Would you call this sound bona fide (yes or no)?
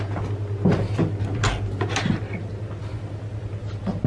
yes